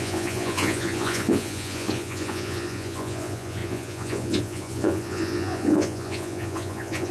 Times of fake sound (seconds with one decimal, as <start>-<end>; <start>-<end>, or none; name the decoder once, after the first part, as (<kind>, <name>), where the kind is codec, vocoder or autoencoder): 0.0-7.1 (vocoder, Vocos)